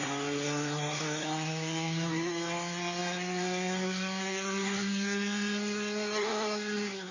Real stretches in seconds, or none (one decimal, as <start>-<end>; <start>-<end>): none